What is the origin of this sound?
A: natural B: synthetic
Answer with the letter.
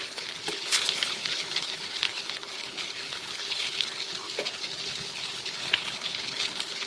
B